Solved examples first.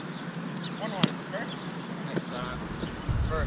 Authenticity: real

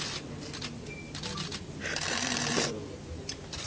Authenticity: real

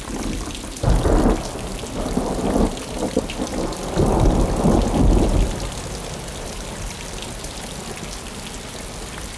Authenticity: real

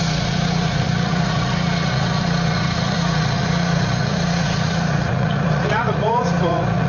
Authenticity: fake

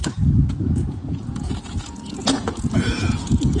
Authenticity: fake